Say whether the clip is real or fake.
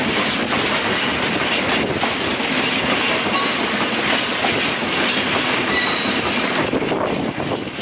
real